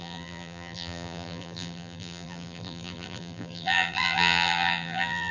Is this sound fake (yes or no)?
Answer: yes